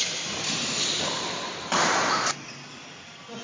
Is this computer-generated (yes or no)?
yes